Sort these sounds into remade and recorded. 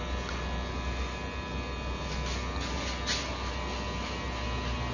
recorded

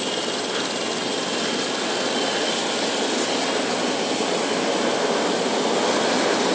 recorded